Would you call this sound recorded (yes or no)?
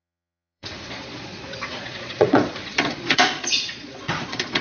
no